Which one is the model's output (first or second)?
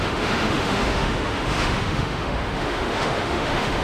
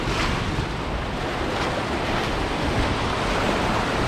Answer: first